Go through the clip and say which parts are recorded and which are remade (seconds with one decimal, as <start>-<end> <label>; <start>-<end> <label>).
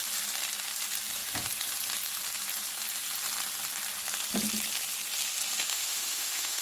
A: 0.0-5.7 recorded; 5.7-6.6 remade